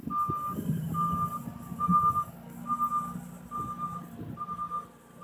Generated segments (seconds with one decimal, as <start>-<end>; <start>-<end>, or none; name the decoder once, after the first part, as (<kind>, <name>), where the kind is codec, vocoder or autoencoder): none